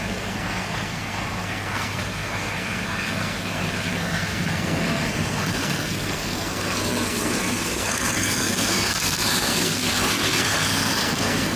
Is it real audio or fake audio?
fake